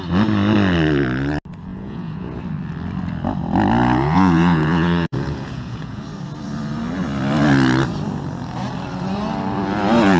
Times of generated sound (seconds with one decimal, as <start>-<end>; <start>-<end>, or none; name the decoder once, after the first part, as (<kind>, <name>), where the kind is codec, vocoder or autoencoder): 1.7-2.4 (vocoder, Vocos); 3.8-6.0